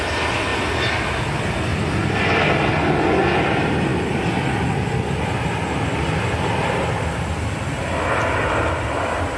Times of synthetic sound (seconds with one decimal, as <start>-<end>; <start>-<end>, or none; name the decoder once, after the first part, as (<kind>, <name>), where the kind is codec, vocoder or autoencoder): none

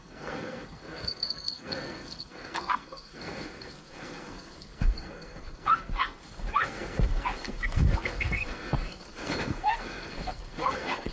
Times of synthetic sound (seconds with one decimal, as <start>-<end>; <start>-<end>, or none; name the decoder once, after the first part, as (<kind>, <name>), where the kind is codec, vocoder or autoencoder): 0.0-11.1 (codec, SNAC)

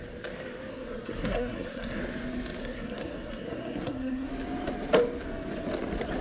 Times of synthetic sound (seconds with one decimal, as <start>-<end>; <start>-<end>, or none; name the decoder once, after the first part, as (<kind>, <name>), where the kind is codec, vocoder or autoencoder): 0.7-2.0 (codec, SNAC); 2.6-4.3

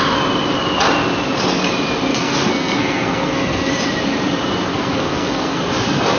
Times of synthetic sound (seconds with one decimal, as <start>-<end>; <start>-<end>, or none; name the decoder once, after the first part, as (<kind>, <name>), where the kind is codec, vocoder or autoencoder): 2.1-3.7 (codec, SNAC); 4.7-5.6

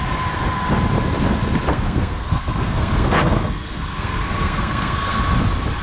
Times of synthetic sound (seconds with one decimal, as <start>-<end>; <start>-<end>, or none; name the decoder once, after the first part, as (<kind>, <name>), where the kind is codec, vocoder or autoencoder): 1.7-5.2 (codec, SNAC)

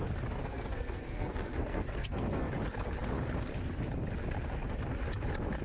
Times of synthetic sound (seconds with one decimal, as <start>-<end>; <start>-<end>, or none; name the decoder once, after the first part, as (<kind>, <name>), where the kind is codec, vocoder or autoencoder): 0.4-2.5 (codec, SNAC)